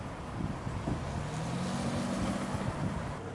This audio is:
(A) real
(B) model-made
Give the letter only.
A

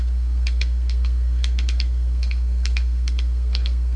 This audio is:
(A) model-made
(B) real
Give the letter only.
A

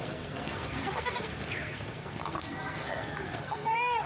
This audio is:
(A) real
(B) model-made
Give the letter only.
B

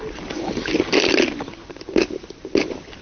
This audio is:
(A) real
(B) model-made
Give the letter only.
A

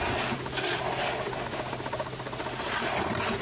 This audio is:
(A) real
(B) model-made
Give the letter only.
A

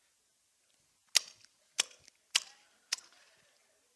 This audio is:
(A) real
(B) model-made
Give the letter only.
A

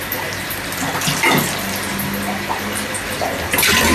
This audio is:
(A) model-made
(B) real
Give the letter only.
B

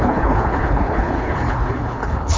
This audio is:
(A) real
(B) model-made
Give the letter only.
B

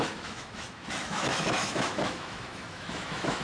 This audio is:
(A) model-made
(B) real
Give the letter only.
A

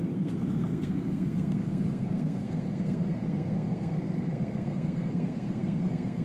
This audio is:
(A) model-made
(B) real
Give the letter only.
A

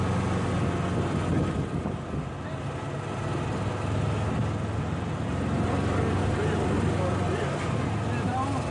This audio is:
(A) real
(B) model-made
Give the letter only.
A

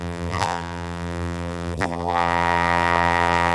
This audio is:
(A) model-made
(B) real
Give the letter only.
A